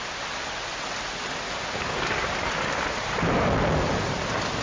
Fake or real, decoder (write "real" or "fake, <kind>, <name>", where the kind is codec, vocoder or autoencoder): real